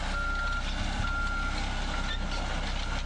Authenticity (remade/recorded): recorded